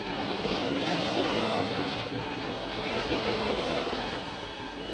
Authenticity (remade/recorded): remade